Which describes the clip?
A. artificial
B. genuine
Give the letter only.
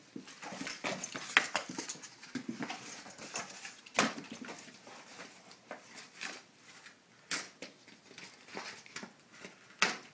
B